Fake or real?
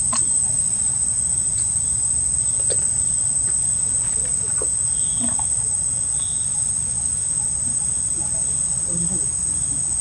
real